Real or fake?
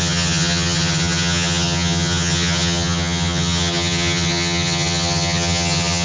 fake